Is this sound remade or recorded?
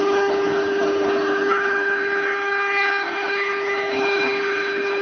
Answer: remade